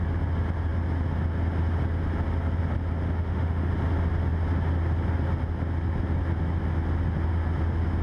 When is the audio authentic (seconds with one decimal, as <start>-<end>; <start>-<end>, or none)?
0.0-3.0; 3.7-8.0